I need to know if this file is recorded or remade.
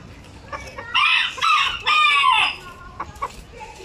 recorded